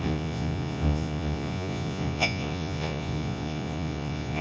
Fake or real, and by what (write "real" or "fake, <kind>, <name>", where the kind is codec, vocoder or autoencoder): fake, vocoder, Vocos